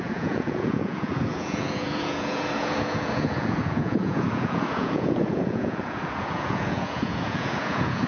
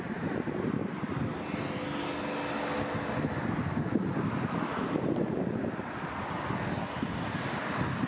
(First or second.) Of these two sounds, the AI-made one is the first